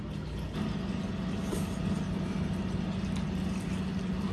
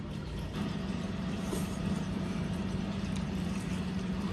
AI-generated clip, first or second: second